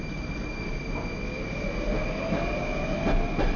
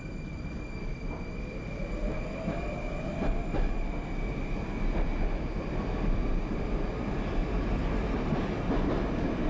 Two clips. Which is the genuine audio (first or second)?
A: first